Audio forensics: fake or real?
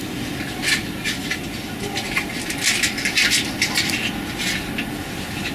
real